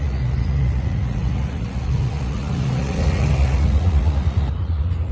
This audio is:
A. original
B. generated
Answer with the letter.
B